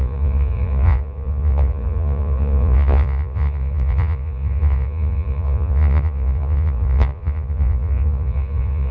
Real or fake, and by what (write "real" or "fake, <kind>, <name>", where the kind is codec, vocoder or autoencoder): fake, vocoder, Vocos